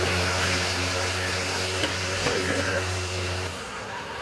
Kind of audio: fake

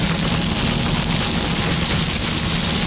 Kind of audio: real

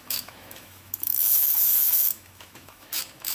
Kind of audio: fake